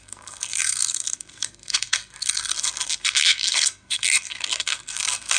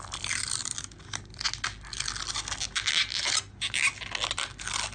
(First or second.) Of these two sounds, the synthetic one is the first